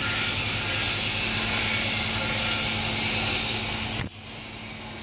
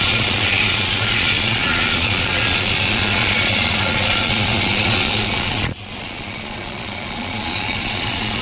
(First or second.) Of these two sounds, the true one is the first